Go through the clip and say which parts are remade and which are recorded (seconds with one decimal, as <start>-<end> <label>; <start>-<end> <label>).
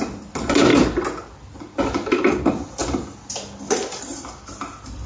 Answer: 0.0-5.1 recorded